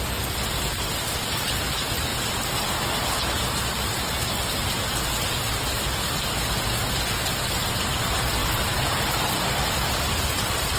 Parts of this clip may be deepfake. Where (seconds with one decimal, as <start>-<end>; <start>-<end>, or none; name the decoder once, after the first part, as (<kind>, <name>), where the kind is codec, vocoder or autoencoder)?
0.0-2.1 (vocoder, BigVGAN v2); 6.5-8.4; 9.2-10.8